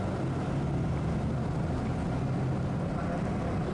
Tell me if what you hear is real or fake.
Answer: real